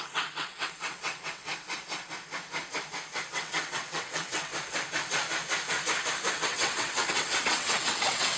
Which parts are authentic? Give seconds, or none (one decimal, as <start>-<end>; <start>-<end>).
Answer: 1.5-3.3; 4.5-6.3